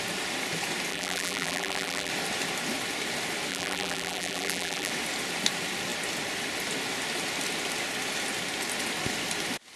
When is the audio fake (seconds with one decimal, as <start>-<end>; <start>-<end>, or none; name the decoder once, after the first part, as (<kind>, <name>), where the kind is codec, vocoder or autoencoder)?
0.9-2.1 (vocoder, BigVGAN v2); 3.5-4.9